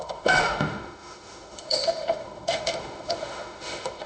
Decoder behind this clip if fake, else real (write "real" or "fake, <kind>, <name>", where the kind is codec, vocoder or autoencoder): fake, autoencoder, DAC-VAE